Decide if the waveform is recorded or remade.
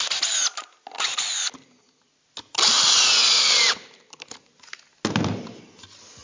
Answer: recorded